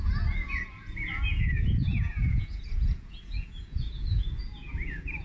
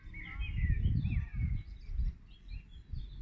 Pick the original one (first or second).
second